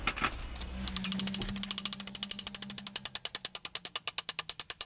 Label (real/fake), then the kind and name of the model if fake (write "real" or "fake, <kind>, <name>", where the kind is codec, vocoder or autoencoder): real